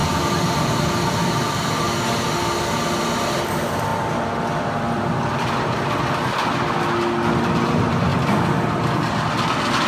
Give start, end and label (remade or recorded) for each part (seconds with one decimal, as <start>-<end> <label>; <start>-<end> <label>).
0.0-8.1 recorded; 8.1-9.0 remade; 9.0-9.9 recorded